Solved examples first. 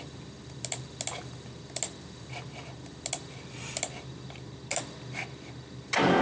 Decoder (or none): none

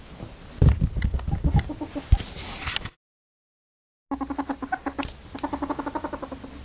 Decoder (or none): none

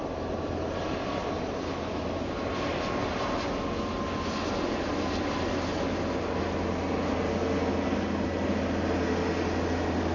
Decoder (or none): none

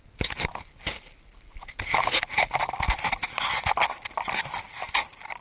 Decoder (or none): none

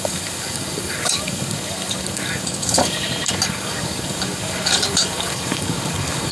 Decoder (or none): codec, DAC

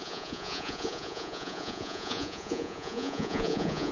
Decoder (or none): vocoder, Vocos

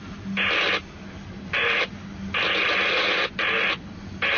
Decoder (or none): none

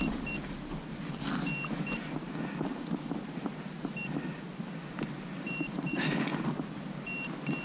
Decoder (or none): none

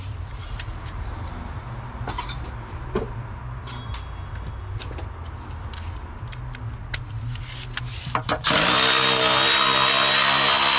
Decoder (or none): none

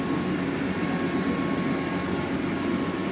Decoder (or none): none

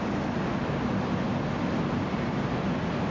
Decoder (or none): none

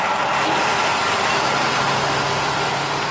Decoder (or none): none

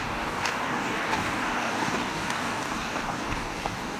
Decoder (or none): codec, DAC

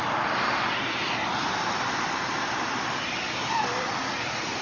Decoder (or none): vocoder, BigVGAN v2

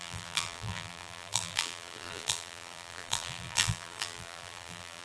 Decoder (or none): vocoder, BigVGAN v2